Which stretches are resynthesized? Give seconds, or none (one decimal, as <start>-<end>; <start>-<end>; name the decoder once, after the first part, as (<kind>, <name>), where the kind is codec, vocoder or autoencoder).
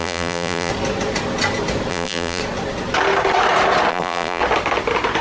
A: 0.0-0.7 (vocoder, BigVGAN v2); 1.9-2.4; 3.9-4.4